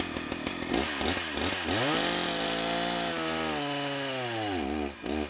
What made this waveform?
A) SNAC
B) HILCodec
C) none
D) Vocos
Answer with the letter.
C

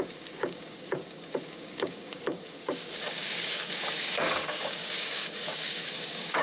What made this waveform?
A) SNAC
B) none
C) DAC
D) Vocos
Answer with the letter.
C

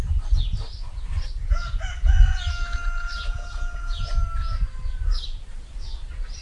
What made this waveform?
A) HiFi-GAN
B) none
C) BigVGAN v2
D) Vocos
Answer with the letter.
B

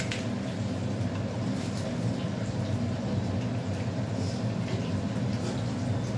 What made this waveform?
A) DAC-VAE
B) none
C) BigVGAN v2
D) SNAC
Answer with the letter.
B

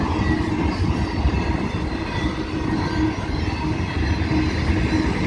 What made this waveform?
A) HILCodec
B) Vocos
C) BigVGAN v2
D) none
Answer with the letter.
D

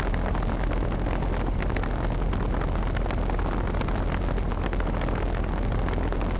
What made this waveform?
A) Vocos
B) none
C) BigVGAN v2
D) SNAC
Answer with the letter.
B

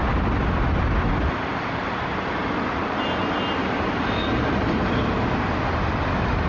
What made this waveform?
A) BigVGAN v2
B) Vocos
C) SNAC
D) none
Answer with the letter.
D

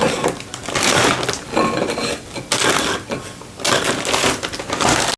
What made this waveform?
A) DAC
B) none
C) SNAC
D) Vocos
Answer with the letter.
B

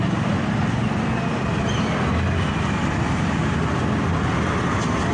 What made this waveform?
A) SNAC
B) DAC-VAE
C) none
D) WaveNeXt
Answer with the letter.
C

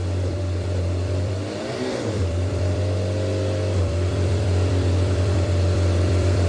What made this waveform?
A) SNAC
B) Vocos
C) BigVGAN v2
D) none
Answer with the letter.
C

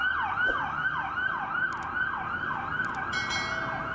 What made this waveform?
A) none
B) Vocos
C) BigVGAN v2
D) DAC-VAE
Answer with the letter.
A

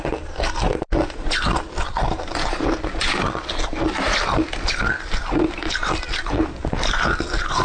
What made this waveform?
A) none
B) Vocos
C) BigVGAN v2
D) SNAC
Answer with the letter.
A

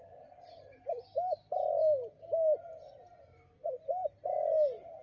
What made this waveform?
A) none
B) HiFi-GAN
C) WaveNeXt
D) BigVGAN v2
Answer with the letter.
A